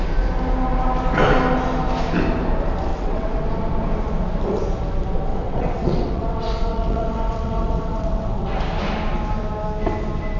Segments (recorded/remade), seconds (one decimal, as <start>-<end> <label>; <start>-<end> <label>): 0.0-2.9 recorded; 2.9-3.5 remade; 3.5-5.3 recorded; 5.3-8.6 remade; 8.6-10.4 recorded